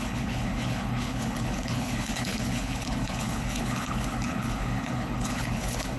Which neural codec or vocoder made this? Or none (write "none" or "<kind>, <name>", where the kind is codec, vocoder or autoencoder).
codec, HILCodec